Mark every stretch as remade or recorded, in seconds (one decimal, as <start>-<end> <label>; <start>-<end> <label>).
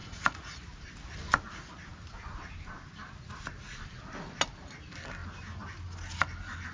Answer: 0.0-0.6 remade; 0.6-6.7 recorded